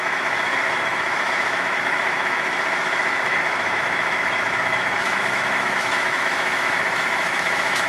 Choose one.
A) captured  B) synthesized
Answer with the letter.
B